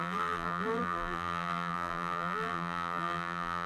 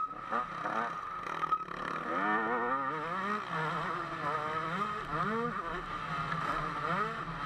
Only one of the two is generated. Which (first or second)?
first